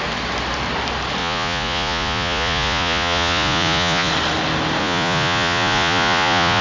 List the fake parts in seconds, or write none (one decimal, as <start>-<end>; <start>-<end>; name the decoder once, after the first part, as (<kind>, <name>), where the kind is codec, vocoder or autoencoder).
1.2-4.1 (vocoder, Vocos); 4.8-6.6